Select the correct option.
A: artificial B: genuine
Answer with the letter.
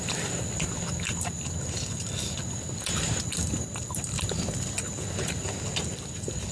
B